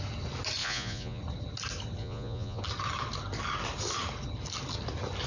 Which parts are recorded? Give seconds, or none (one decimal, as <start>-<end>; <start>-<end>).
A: 0.0-0.6; 1.2-2.0; 2.6-5.3